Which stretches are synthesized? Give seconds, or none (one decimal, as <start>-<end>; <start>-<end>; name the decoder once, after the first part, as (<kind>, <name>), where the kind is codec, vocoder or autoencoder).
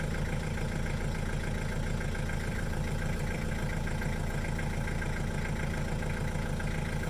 2.5-3.5 (vocoder, BigVGAN v2)